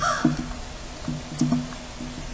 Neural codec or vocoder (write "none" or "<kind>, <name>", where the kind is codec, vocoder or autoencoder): none